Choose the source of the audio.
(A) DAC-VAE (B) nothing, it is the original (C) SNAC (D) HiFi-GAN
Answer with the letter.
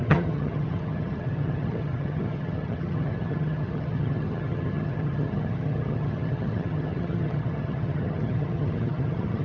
D